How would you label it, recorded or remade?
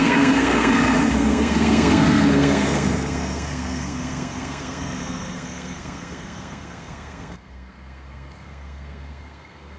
remade